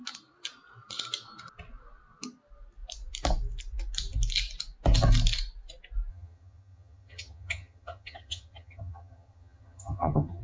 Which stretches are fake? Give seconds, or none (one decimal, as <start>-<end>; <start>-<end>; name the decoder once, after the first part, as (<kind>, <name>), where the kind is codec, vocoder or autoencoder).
6.1-10.4 (vocoder, HiFi-GAN)